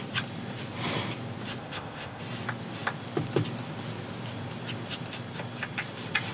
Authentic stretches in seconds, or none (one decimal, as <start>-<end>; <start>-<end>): 0.0-1.6; 2.2-6.3